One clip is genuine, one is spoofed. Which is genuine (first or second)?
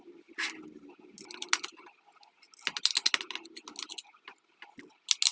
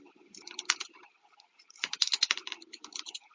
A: first